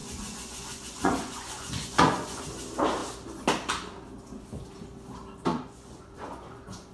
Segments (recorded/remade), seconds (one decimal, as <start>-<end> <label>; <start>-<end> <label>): 0.0-2.4 remade; 2.4-5.5 recorded; 5.5-6.9 remade